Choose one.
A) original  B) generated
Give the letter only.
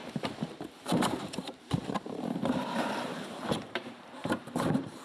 B